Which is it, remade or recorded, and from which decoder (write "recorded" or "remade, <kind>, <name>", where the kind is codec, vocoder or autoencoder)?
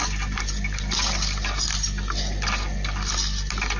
recorded